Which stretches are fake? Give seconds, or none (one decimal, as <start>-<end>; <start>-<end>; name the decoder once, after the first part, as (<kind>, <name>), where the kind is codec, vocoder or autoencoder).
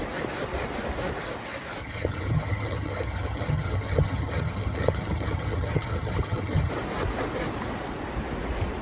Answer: 1.8-6.7 (vocoder, HiFi-GAN)